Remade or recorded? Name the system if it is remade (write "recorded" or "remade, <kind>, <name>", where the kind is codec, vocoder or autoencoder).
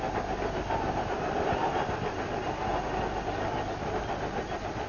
recorded